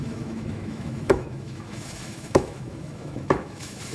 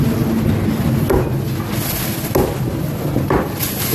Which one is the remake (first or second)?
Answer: first